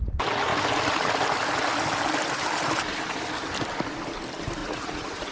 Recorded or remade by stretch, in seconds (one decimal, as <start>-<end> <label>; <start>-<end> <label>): 0.0-4.6 recorded; 4.6-5.3 remade